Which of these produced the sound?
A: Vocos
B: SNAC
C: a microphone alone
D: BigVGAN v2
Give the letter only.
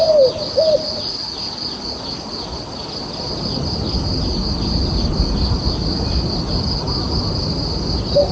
C